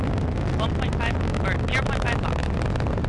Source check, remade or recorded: recorded